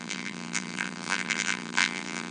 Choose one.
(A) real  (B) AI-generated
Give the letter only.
B